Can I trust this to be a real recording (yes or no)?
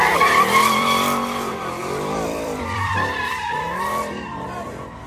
no